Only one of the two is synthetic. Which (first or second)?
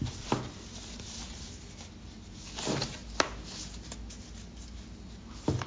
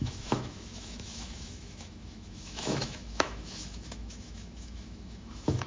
second